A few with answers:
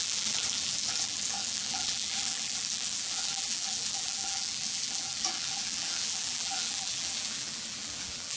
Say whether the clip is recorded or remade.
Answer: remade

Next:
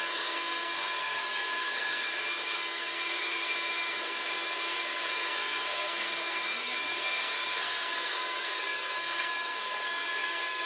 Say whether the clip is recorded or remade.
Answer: remade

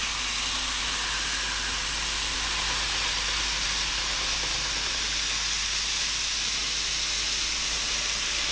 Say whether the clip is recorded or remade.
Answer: recorded